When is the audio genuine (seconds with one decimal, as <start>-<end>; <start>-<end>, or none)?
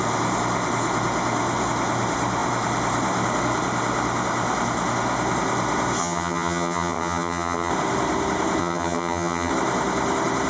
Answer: 0.0-6.0; 7.7-8.6; 9.5-10.5